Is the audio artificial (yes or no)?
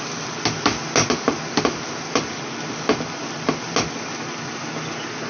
no